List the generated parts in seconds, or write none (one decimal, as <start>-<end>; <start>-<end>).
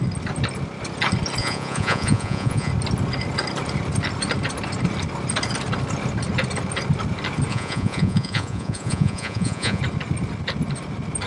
1.4-2.7; 7.5-9.8